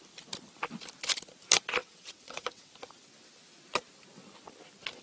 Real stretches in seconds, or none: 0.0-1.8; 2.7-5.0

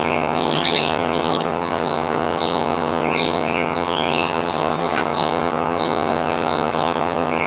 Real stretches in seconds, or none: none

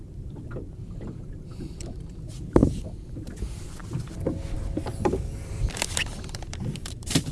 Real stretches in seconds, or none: none

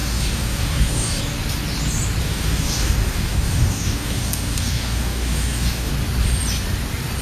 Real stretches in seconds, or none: 1.2-2.2; 5.9-7.2